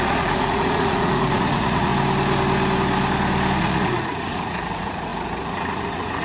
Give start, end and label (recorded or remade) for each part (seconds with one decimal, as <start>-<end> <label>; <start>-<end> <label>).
0.0-1.9 remade; 1.9-3.6 recorded; 3.6-6.2 remade